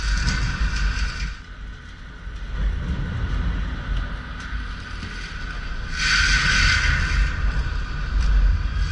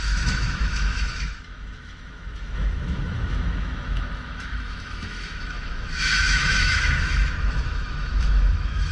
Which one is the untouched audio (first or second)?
first